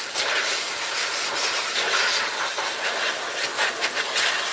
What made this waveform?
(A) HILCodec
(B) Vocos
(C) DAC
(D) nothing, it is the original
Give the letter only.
D